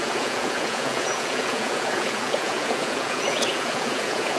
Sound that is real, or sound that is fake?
fake